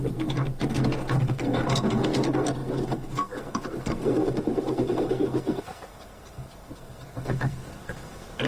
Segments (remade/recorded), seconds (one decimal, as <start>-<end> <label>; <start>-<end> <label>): 0.0-8.5 remade